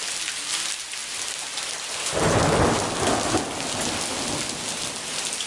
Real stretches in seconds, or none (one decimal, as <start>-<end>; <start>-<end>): 0.0-5.5